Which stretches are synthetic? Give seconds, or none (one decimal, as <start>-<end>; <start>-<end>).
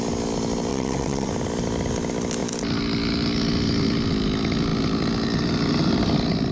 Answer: 0.7-1.3